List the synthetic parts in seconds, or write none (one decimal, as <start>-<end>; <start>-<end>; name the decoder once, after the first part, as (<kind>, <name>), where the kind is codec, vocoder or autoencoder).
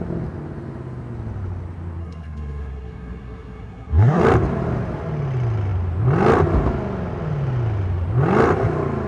2.0-4.2 (codec, SNAC)